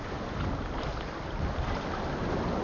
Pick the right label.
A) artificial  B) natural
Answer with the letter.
B